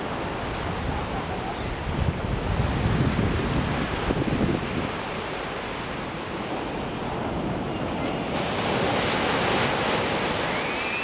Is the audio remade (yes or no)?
no